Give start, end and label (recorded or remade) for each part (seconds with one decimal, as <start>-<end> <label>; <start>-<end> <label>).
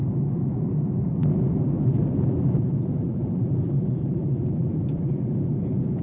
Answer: 0.0-6.0 remade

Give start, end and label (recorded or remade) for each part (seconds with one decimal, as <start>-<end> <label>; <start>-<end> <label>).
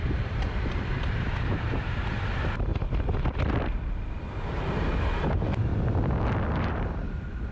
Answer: 0.0-2.7 remade; 2.7-4.4 recorded; 4.4-5.7 remade; 5.7-6.6 recorded; 6.6-7.5 remade